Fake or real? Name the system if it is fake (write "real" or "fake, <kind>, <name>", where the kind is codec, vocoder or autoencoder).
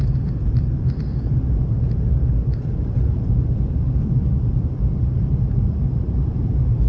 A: fake, vocoder, BigVGAN v2